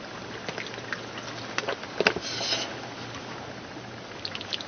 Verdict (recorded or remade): recorded